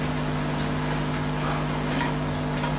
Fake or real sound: real